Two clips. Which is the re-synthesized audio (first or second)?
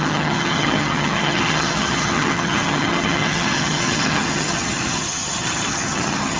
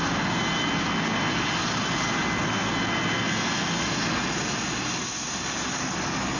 first